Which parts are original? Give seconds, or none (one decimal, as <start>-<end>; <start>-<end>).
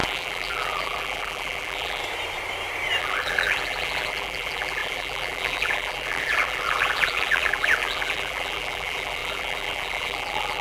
2.0-3.0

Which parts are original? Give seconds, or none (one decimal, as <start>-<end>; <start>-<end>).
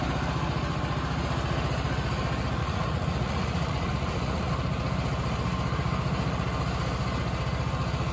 0.0-2.6; 4.5-8.1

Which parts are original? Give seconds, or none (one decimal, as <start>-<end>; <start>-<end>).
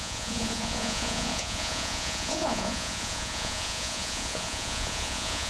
none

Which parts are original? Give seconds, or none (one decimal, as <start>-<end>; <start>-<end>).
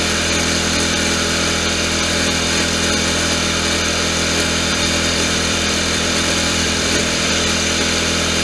0.0-4.7; 7.3-8.4